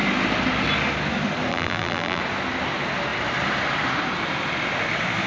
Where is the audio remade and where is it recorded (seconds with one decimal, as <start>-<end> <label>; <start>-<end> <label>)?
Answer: 0.0-1.5 recorded; 1.5-2.2 remade; 2.2-5.3 recorded